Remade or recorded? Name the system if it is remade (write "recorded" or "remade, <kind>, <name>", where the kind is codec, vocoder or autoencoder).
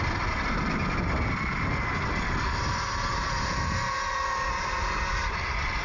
recorded